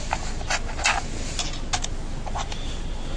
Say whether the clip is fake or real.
real